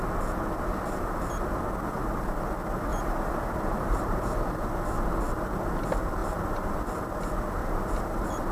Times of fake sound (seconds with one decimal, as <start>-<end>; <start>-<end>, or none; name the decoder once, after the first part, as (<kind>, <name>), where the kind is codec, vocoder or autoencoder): 2.9-4.4 (vocoder, BigVGAN v2); 6.2-6.8; 7.6-8.5